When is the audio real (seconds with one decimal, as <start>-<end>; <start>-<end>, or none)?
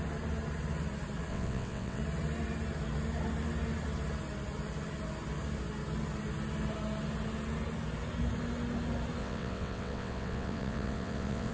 0.0-1.3; 2.0-9.2